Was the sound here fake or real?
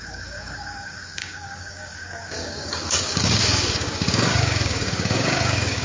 fake